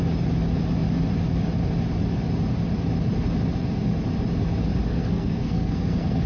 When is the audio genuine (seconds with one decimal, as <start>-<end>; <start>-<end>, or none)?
0.0-4.9